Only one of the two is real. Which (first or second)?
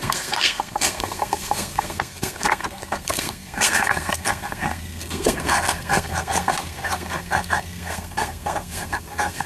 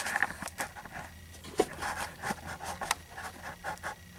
second